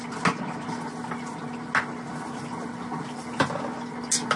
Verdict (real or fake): real